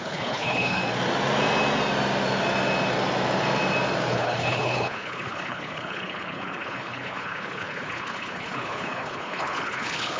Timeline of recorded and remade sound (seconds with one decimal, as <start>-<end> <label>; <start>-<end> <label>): 0.0-0.8 remade; 0.8-4.1 recorded; 4.1-10.2 remade